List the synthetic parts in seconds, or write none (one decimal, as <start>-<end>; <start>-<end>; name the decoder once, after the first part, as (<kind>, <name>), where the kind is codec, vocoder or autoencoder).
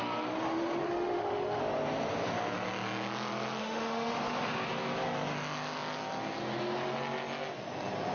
0.9-1.6 (autoencoder, DAC-VAE); 3.6-4.2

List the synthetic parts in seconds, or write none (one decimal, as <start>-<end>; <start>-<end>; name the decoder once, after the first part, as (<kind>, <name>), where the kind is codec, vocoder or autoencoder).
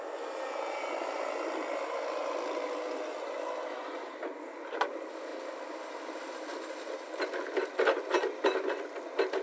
none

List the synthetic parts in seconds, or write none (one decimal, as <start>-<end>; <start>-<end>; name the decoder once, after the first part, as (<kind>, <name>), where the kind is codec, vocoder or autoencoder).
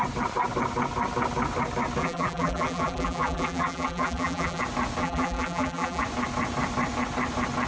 2.0-4.6 (vocoder, BigVGAN v2); 5.0-6.0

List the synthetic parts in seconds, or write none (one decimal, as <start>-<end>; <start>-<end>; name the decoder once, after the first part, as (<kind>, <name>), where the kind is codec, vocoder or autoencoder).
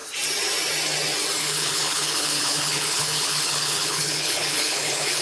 1.4-5.2 (codec, HILCodec)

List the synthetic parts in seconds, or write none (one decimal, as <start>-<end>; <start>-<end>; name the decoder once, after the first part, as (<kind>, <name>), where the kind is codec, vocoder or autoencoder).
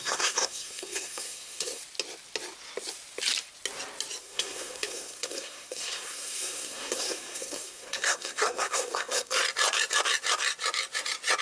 0.0-1.8 (codec, SNAC); 4.2-9.4